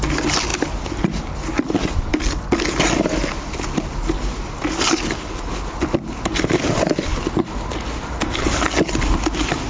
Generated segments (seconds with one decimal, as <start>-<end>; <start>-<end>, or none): none